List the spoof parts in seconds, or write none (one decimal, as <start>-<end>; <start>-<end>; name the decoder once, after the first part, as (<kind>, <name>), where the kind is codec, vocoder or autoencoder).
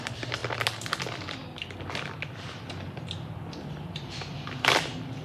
0.0-0.4 (vocoder, BigVGAN v2); 3.5-5.2